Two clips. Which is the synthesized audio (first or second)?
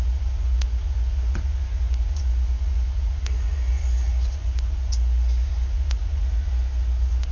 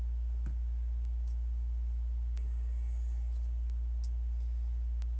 first